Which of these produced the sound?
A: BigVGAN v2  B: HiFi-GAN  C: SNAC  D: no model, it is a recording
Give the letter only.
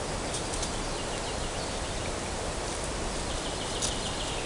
D